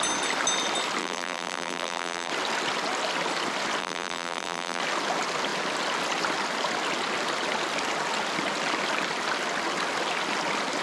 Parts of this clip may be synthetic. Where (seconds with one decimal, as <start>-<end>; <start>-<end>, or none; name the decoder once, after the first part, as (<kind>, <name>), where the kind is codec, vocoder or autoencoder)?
1.0-2.3 (vocoder, BigVGAN v2); 3.8-4.8